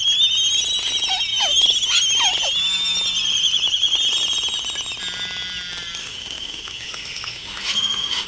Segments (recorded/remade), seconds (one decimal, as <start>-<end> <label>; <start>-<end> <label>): 0.0-6.0 recorded; 6.0-8.3 remade